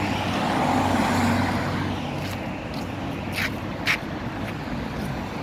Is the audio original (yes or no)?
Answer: yes